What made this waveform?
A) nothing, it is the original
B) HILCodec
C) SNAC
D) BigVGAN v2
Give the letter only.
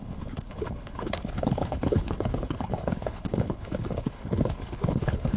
B